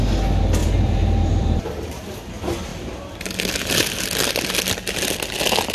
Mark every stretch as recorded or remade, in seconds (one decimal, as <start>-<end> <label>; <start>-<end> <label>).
0.0-0.6 recorded; 0.6-2.0 remade; 2.0-5.7 recorded